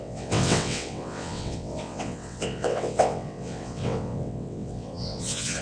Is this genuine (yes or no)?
no